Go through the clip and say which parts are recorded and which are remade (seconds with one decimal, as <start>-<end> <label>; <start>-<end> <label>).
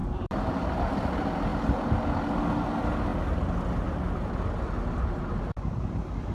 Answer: 0.0-0.9 remade; 0.9-1.5 recorded; 1.5-2.4 remade; 2.4-6.3 recorded